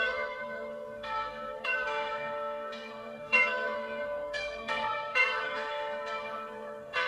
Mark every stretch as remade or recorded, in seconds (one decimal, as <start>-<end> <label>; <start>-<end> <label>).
0.0-7.1 remade